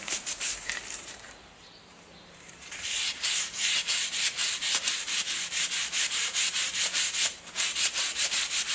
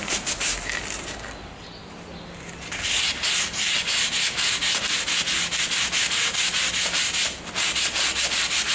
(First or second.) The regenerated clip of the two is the first